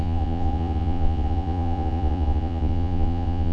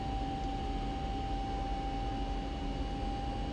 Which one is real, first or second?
second